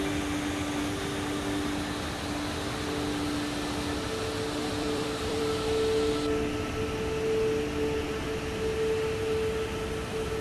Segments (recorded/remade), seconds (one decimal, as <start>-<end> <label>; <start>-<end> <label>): 0.0-4.6 recorded; 4.6-5.4 remade; 5.4-10.4 recorded